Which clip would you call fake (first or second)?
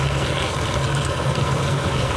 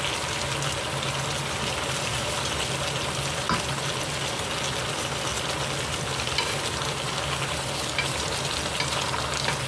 first